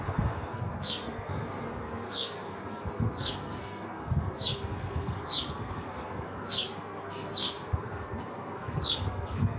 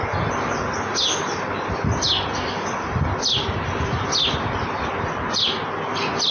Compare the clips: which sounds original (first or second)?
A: second